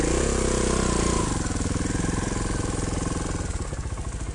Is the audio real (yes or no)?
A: yes